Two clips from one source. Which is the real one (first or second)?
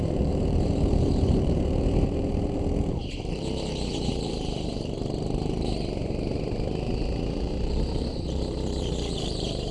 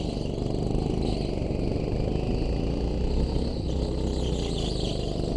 second